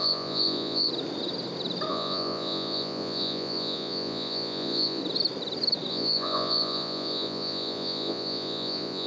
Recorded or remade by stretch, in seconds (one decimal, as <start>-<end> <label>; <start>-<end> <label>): 0.0-0.9 remade; 0.9-1.9 recorded; 1.9-5.0 remade; 5.0-5.9 recorded; 5.9-9.1 remade